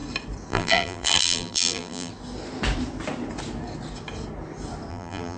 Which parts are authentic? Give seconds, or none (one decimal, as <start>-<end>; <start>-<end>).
0.0-0.5; 2.1-4.9

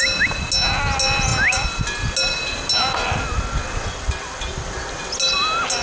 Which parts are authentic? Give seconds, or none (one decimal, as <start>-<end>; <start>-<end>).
0.0-5.8

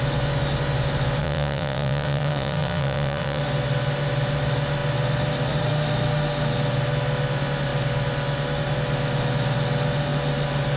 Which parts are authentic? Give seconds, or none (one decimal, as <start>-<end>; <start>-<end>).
0.0-1.2; 3.4-10.8

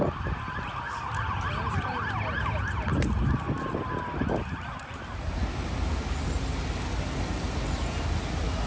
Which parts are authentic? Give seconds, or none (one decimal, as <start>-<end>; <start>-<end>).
0.0-8.7

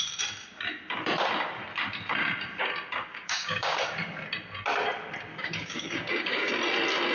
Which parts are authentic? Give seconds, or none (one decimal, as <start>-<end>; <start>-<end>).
0.0-3.1; 3.8-5.3; 6.5-7.1

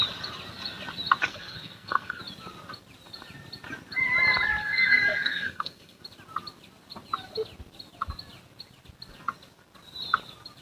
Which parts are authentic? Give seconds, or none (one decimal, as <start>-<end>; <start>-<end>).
0.0-1.3; 2.2-4.6; 6.0-10.6